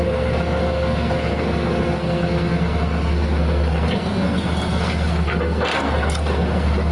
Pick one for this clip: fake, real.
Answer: fake